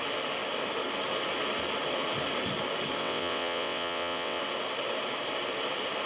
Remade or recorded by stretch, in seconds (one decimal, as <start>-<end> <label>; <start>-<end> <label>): 0.0-3.0 recorded; 3.0-4.4 remade; 4.4-6.1 recorded